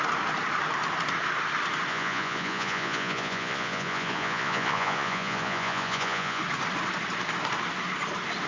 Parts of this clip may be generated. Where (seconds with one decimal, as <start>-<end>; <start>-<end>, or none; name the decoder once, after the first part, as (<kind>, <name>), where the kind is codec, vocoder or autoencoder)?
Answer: 1.9-6.4 (vocoder, Vocos)